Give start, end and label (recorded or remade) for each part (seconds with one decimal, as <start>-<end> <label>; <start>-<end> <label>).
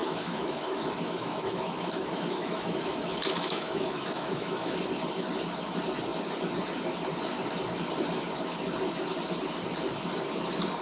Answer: 0.0-4.8 remade; 4.8-10.8 recorded